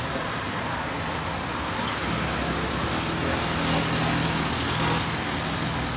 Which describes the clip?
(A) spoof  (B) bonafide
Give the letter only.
B